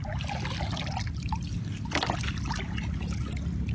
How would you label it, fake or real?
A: real